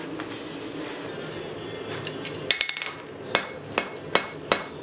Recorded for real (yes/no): yes